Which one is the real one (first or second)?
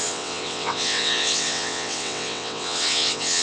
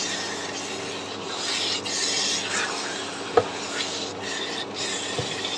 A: second